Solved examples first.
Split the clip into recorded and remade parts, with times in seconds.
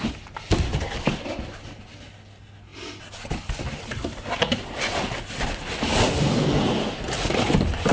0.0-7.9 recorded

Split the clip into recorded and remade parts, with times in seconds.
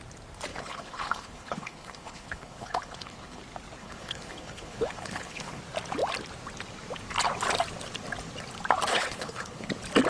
0.0-0.5 recorded; 0.5-3.4 remade; 3.4-3.8 recorded; 3.8-5.6 remade; 5.6-8.9 recorded; 8.9-9.7 remade; 9.7-10.1 recorded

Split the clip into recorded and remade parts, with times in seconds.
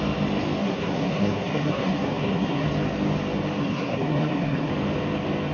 0.0-0.6 recorded; 0.6-2.7 remade; 2.7-3.6 recorded; 3.6-4.7 remade; 4.7-5.5 recorded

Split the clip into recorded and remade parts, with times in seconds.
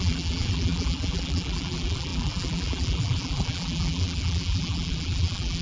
0.0-5.6 remade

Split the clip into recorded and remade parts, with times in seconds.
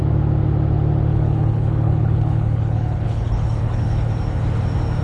0.0-1.1 recorded; 1.1-4.1 remade; 4.1-5.0 recorded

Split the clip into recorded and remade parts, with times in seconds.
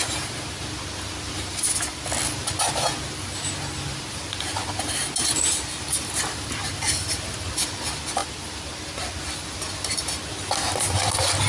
0.0-11.5 recorded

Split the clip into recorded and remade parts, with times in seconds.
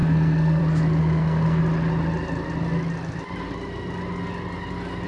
0.0-0.6 remade; 0.6-1.0 recorded; 1.0-1.6 remade; 1.6-5.1 recorded